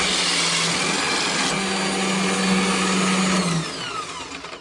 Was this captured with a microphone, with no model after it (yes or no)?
yes